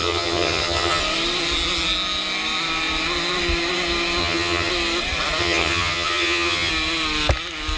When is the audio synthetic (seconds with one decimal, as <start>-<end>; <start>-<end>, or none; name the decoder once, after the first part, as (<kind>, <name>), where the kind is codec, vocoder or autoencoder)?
0.0-1.0 (vocoder, HiFi-GAN); 4.2-4.7; 5.4-6.7